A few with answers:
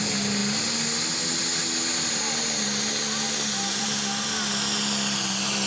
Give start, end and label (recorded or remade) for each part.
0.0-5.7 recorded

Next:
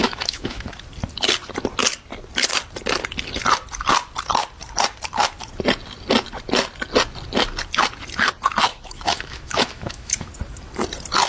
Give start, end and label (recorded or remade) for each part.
0.0-0.7 remade; 0.7-8.7 recorded; 8.7-10.3 remade; 10.3-11.3 recorded

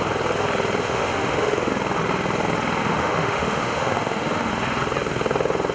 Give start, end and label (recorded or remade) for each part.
0.0-0.8 recorded; 0.8-1.7 remade; 1.7-2.8 recorded; 2.8-4.5 remade; 4.5-5.7 recorded

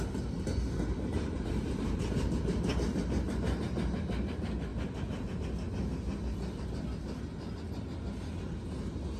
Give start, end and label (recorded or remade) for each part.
0.0-1.1 recorded; 1.1-2.7 remade; 2.7-9.2 recorded

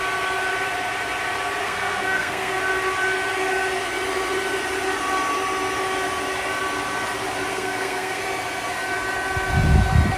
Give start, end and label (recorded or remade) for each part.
0.0-1.6 recorded; 1.6-2.6 remade; 2.6-7.5 recorded; 7.5-8.2 remade; 8.2-10.2 recorded

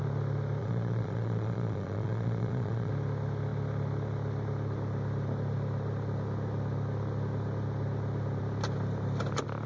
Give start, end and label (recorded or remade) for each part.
0.0-0.6 recorded; 0.6-2.9 remade; 2.9-9.7 recorded